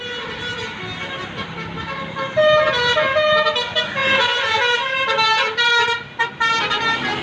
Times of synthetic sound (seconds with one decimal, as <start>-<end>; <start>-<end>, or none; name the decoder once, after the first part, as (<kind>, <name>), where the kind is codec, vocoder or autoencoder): none